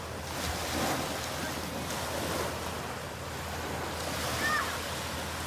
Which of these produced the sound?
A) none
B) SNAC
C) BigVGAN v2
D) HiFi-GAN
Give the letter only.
A